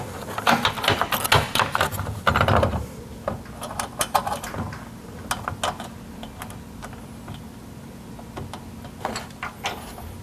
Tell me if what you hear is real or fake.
real